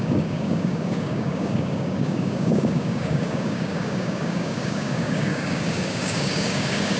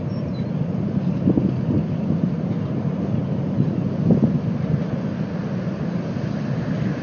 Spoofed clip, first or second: first